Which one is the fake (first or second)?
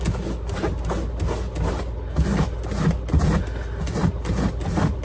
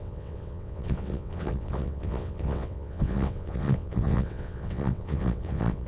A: second